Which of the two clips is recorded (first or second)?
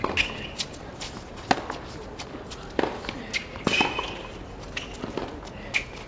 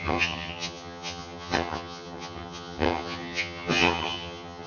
first